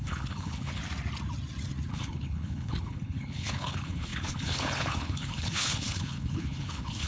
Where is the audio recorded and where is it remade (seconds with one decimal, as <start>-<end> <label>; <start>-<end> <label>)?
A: 0.0-0.8 remade; 0.8-1.9 recorded; 1.9-7.1 remade